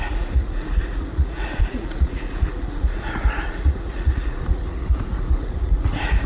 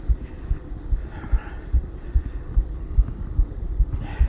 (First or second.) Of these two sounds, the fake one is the first